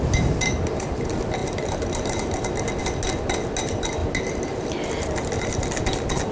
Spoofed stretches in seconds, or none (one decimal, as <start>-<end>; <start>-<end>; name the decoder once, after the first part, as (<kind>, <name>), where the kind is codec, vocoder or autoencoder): none